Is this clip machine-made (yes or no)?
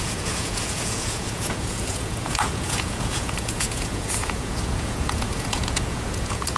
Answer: yes